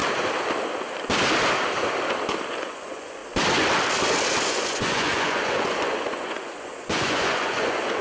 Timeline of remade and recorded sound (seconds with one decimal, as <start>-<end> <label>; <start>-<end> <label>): 0.0-2.5 recorded; 2.5-3.2 remade; 3.2-4.5 recorded; 4.5-8.0 remade